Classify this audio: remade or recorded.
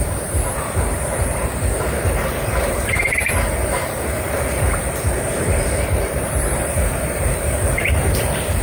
remade